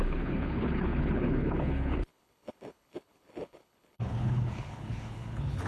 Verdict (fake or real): fake